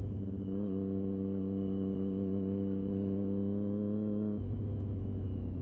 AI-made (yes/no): yes